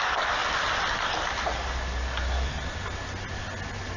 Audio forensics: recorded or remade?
recorded